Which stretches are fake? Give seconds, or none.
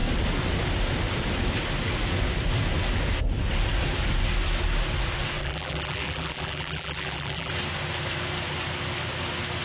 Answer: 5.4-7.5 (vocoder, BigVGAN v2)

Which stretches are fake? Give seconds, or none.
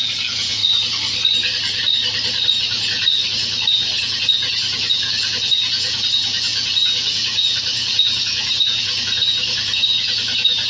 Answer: 0.0-0.6 (vocoder, Vocos); 2.5-3.0; 3.7-10.7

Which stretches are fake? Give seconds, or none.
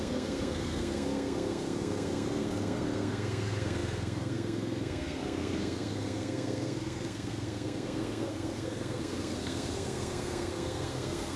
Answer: 0.0-11.4 (codec, SNAC)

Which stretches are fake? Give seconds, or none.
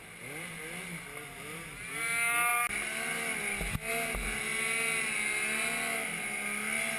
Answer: none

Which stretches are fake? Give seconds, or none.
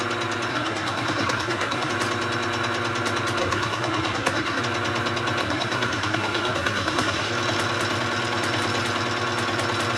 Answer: 0.5-1.9 (codec, SNAC); 3.4-4.6; 5.4-7.3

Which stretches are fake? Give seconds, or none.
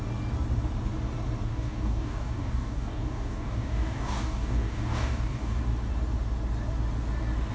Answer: 1.5-5.6 (codec, DAC)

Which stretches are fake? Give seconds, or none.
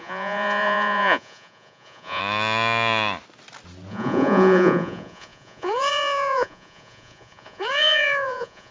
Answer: 0.0-2.2 (vocoder, Vocos); 3.9-8.7